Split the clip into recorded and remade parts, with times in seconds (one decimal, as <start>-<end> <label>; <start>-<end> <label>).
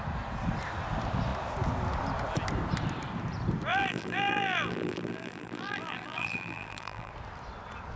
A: 0.0-3.7 recorded; 3.7-7.1 remade; 7.1-8.0 recorded